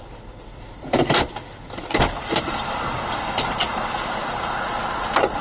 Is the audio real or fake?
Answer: fake